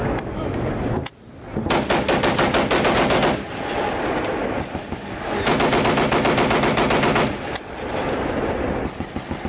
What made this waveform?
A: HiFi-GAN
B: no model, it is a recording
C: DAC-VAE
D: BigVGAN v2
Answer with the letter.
B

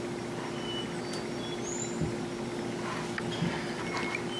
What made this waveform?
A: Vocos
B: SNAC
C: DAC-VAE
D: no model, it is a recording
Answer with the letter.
D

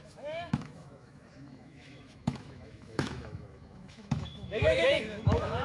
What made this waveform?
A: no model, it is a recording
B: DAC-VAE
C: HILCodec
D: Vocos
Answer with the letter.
B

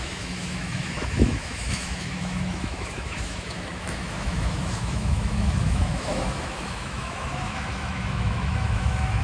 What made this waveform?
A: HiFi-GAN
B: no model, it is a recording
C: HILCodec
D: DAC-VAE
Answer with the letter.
D